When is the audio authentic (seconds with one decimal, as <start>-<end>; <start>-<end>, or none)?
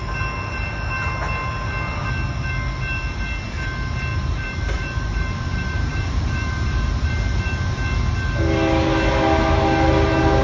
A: 0.0-4.1; 7.1-10.4